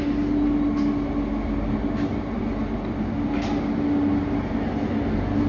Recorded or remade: recorded